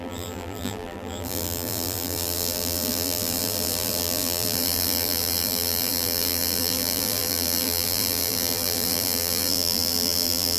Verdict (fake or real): fake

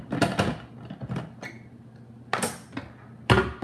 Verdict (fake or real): real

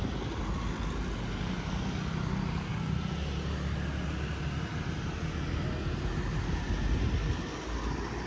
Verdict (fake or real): real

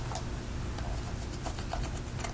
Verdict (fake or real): real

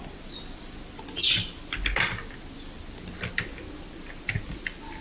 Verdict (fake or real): real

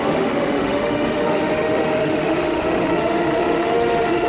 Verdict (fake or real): fake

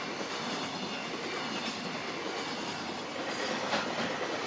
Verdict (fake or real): real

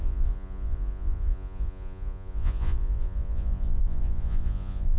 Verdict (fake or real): fake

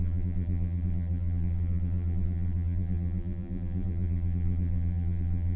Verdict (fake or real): fake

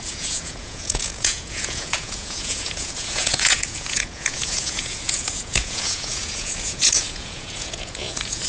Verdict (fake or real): fake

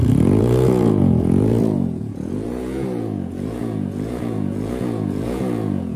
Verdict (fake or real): fake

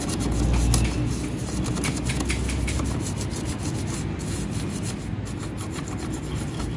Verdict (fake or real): real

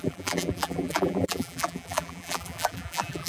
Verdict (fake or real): fake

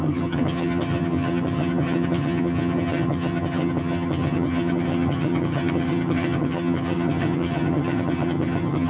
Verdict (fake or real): fake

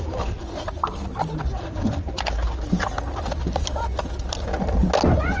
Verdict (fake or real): real